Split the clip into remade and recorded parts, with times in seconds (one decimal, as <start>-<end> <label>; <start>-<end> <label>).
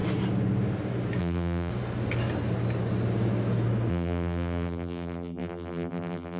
0.0-1.2 recorded; 1.2-1.7 remade; 1.7-3.9 recorded; 3.9-6.4 remade